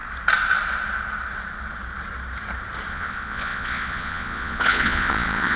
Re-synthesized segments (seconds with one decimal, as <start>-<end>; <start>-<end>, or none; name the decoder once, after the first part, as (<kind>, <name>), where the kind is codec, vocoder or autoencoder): 2.9-5.6 (vocoder, Vocos)